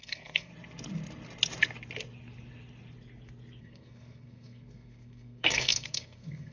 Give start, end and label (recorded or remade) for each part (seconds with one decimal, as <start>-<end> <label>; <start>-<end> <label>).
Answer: 0.0-0.5 remade; 0.5-3.6 recorded; 3.6-6.5 remade